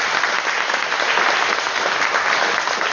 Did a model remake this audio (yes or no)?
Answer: no